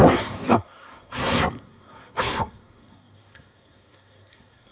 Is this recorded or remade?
remade